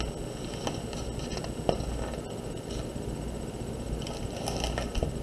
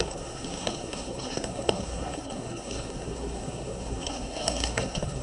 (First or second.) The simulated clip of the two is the second